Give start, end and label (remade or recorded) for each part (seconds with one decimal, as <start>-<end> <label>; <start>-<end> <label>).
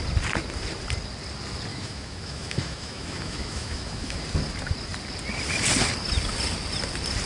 0.0-1.7 recorded; 1.7-4.2 remade; 4.2-7.3 recorded